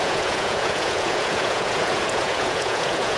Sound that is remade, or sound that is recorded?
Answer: remade